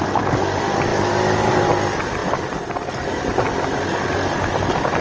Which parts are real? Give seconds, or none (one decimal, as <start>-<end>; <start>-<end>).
0.0-5.0